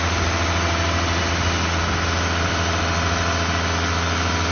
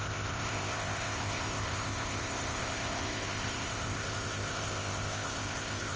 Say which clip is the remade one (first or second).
second